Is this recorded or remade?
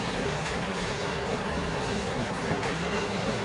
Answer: remade